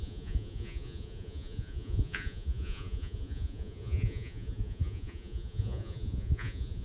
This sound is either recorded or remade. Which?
remade